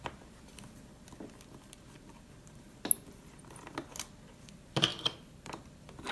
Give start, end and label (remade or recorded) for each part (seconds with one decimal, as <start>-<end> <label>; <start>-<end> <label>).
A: 0.0-4.9 recorded; 4.9-5.5 remade; 5.5-6.1 recorded